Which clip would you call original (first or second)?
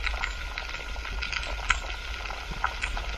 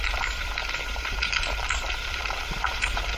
first